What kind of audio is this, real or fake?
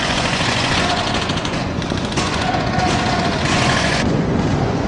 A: fake